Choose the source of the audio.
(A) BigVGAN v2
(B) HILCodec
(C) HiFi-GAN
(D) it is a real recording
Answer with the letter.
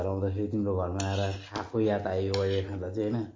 D